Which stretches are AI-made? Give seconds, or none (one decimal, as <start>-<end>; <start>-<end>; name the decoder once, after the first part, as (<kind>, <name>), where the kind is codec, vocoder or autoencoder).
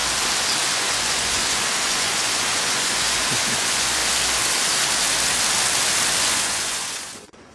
0.7-4.0 (vocoder, Vocos); 6.2-7.5